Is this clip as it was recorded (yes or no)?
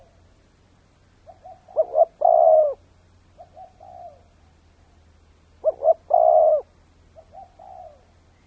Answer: yes